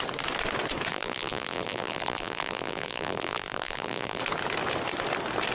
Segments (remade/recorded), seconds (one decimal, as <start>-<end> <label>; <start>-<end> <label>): 0.0-0.9 recorded; 0.9-4.2 remade; 4.2-5.5 recorded